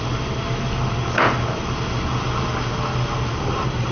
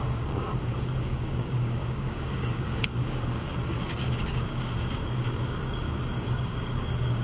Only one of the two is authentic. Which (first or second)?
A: first